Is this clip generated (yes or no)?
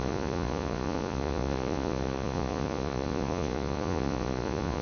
yes